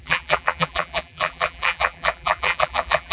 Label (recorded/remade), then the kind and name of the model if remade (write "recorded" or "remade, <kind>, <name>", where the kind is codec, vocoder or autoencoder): remade, vocoder, BigVGAN v2